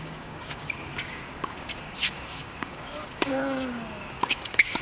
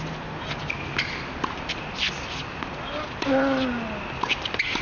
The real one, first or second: second